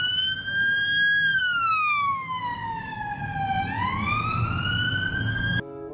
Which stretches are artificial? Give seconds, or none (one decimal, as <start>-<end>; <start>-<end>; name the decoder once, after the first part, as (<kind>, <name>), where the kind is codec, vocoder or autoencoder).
0.0-3.3 (codec, DAC); 5.3-5.9